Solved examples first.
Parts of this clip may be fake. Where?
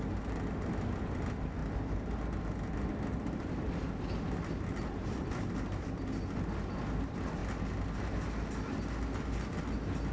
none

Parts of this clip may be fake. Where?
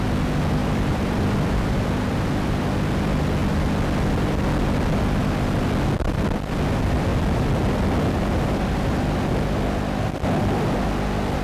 0.6-2.2